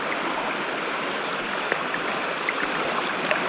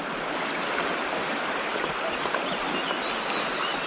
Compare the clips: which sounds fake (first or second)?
first